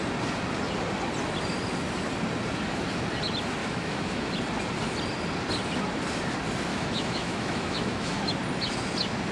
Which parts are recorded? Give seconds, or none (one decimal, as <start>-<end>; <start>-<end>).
0.0-3.6; 4.3-6.7; 8.3-9.3

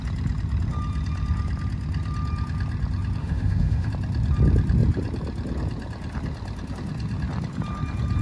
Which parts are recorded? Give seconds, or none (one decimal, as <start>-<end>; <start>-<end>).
0.0-3.2; 3.9-8.2

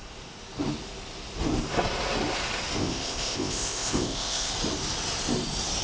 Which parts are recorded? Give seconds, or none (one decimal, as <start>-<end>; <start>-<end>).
0.0-2.8; 4.5-5.8

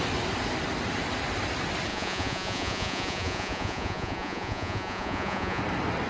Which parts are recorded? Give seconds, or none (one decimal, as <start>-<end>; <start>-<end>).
0.0-1.9; 5.6-6.1

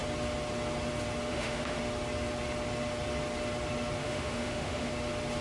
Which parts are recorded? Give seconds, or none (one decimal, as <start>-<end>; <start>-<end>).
0.0-1.3; 1.8-4.0; 4.9-5.4

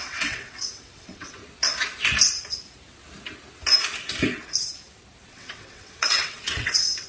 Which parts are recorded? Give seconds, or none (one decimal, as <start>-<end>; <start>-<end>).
1.4-5.3